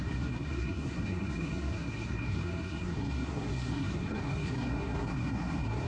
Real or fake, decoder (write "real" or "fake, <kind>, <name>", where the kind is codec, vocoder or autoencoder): fake, codec, SNAC